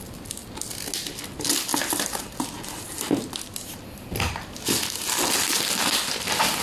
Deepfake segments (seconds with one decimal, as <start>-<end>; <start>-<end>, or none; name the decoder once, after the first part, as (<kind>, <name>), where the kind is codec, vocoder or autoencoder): none